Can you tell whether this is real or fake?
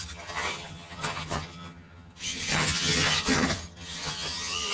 fake